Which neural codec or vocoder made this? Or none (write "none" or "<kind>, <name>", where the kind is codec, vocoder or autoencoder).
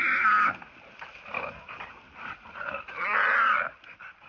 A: vocoder, BigVGAN v2